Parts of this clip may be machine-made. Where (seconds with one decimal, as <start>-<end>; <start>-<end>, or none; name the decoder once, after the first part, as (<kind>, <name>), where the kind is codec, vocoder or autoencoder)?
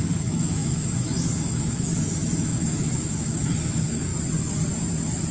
0.0-4.1 (autoencoder, DAC-VAE)